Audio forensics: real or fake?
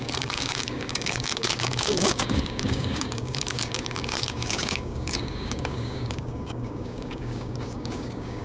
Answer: fake